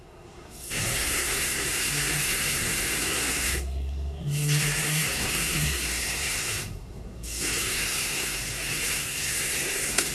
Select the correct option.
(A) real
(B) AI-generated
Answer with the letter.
B